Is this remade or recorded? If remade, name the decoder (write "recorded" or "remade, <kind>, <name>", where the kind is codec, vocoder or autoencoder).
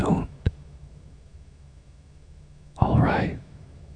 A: remade, autoencoder, DAC-VAE